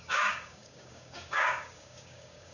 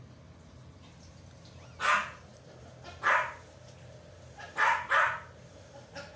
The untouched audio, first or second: second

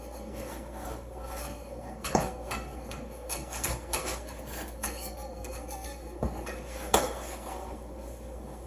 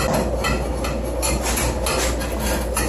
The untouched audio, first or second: second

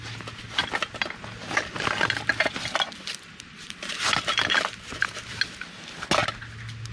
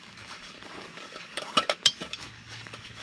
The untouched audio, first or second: first